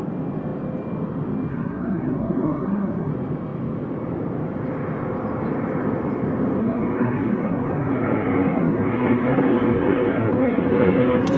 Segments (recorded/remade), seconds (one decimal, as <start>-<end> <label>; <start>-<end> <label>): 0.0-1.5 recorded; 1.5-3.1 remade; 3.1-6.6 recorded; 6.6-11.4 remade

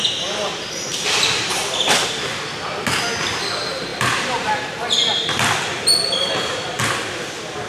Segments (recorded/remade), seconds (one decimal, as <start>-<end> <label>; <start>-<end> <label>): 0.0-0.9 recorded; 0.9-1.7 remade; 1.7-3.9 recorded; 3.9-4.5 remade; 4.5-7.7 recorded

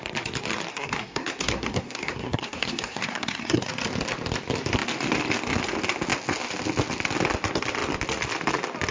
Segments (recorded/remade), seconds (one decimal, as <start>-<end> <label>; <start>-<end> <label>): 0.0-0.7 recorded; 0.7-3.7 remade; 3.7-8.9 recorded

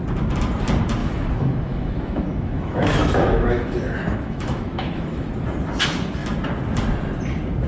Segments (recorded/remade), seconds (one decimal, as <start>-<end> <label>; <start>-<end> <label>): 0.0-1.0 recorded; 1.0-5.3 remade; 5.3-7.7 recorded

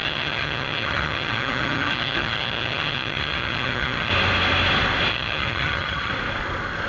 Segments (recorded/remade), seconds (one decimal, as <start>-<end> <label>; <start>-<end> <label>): 0.0-4.1 remade; 4.1-5.1 recorded; 5.1-6.1 remade; 6.1-6.9 recorded